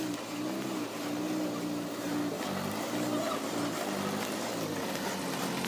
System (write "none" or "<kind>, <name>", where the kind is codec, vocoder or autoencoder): none